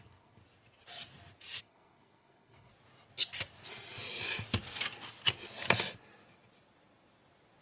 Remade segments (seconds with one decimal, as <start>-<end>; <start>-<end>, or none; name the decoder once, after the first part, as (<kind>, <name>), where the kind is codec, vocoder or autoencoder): 0.0-0.4 (codec, SNAC); 1.6-2.7